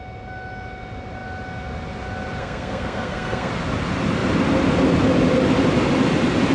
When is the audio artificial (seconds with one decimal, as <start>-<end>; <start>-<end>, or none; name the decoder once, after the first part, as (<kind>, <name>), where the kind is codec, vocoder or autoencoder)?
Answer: 2.4-3.5 (codec, SNAC)